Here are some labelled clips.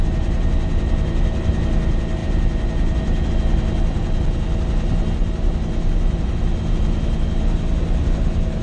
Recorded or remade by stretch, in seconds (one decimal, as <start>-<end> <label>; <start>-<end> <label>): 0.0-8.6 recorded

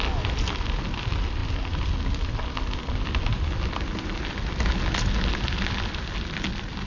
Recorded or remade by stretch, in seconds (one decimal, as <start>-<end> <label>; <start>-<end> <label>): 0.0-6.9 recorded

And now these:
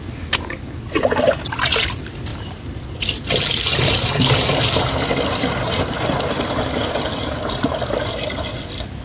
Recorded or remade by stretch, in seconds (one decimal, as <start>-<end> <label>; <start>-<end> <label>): 0.0-9.0 recorded